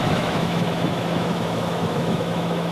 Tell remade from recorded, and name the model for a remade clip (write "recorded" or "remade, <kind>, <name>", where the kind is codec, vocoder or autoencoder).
remade, autoencoder, DAC-VAE